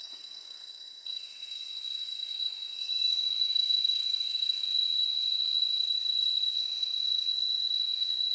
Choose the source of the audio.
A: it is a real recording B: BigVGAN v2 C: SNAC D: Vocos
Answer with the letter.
C